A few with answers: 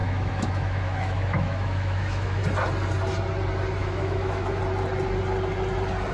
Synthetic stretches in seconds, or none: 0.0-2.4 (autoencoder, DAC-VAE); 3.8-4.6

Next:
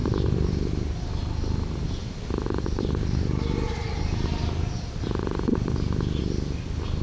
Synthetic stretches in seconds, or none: none